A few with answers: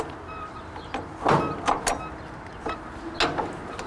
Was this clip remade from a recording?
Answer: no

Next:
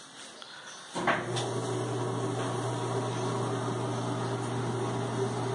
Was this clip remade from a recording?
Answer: no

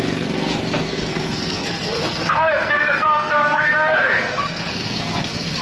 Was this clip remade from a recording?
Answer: yes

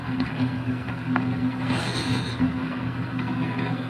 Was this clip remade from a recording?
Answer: yes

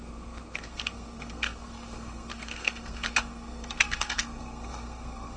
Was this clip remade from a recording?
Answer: yes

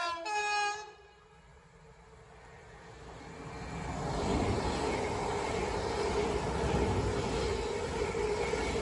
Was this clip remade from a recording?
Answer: no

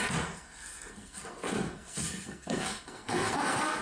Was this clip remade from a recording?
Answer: yes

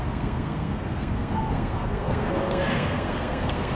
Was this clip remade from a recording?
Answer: yes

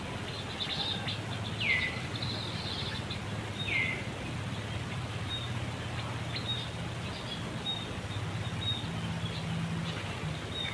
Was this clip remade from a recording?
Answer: no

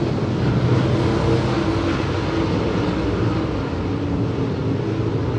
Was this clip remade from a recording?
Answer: no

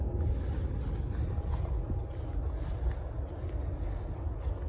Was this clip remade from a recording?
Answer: no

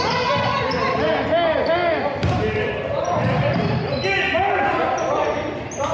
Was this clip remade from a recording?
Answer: no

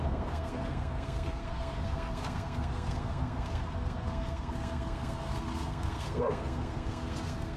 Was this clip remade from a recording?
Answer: yes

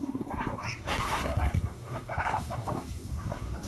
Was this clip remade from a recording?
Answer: yes